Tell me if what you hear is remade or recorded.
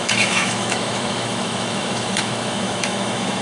remade